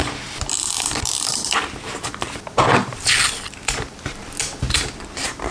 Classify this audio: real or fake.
fake